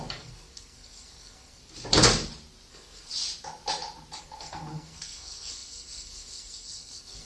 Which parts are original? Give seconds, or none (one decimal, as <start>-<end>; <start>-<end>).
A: 1.6-2.7; 3.1-4.2